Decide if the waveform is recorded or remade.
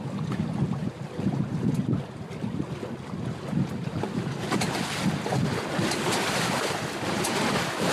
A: recorded